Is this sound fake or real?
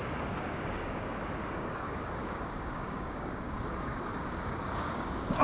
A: fake